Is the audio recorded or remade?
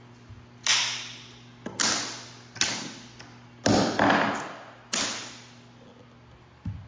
recorded